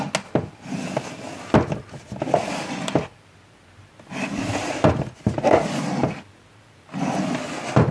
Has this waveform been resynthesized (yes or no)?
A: no